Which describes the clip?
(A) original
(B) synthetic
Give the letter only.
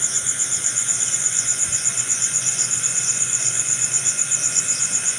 B